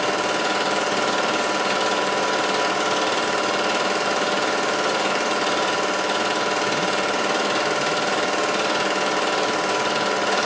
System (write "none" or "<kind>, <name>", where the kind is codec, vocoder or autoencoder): vocoder, BigVGAN v2